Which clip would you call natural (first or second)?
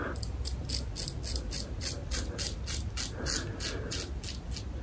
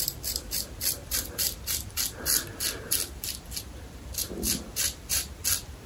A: first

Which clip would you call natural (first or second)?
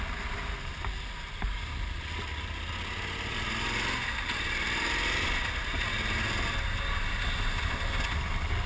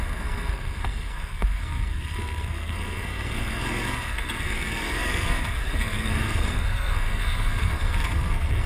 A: first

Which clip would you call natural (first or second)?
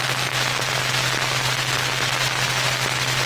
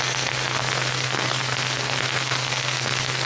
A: first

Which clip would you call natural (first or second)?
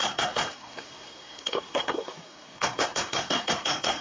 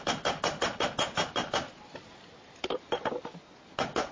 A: second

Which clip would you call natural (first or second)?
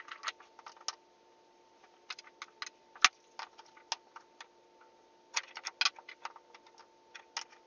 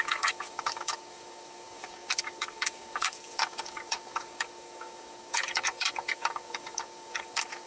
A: first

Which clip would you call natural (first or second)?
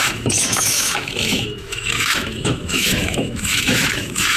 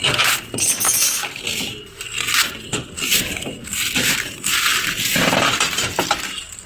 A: second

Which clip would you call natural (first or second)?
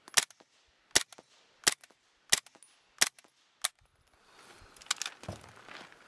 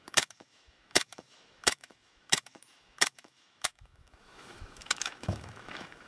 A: first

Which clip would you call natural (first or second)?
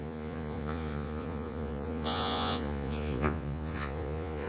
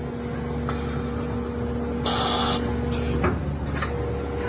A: second